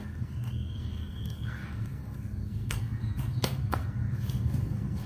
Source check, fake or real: fake